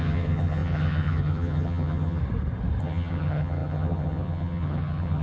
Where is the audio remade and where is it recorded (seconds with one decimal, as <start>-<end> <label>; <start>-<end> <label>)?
0.0-2.2 remade; 2.2-2.8 recorded; 2.8-5.2 remade